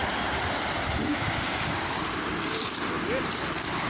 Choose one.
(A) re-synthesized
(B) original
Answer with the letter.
B